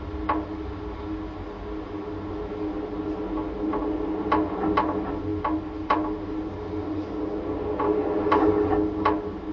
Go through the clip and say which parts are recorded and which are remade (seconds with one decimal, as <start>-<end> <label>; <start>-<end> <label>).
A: 0.0-9.5 recorded